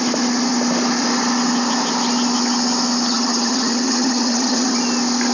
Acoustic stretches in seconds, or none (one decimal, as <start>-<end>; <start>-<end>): 0.0-3.1; 4.8-5.3